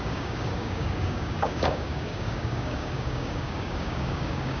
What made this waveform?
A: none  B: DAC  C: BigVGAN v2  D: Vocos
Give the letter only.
B